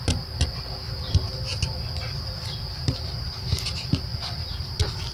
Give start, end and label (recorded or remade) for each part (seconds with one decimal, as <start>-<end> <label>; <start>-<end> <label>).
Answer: 0.0-5.1 recorded